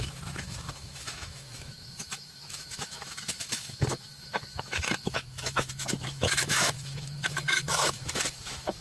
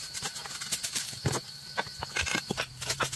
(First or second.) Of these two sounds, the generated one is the first